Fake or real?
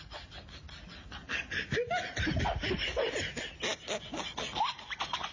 real